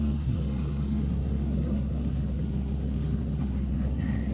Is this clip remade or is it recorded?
remade